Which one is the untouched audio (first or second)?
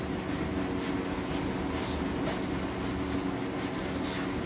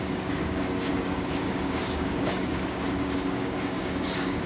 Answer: first